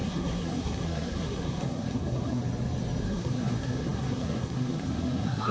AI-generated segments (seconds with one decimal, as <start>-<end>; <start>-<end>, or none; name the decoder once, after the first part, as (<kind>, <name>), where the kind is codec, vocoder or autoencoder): 0.0-2.4 (codec, SNAC); 3.0-5.5